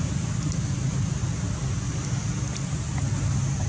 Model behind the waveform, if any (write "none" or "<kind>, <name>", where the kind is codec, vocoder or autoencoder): none